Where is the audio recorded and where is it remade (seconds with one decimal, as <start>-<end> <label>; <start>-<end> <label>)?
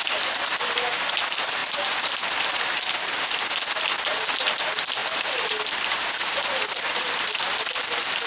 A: 0.0-8.3 recorded